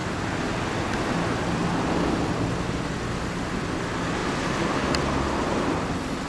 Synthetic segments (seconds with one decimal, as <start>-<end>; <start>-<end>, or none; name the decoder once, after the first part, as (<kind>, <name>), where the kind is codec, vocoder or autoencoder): none